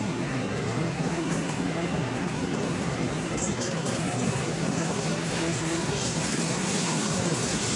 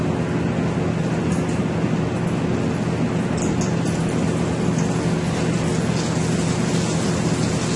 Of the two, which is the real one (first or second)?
second